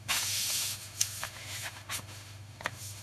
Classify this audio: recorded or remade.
remade